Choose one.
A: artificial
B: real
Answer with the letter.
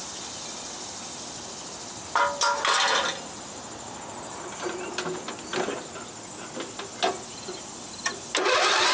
B